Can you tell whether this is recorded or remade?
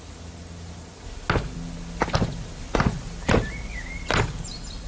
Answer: recorded